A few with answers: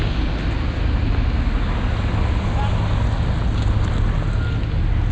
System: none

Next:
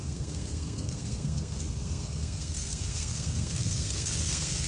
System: codec, SNAC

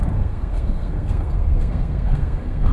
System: codec, SNAC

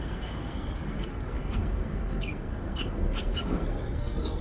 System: codec, SNAC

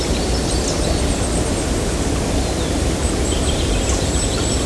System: none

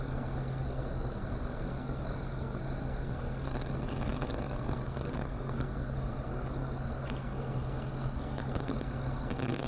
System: codec, SNAC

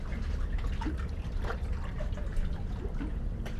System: none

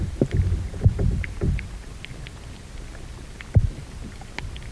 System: none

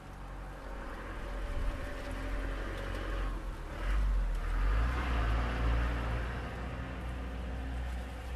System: none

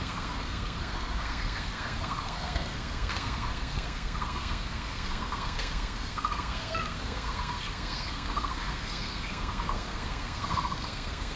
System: codec, SNAC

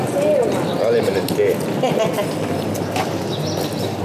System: none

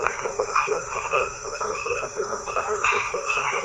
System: codec, SNAC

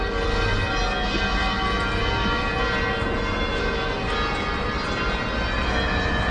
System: none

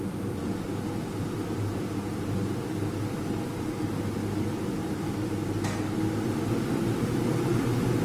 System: none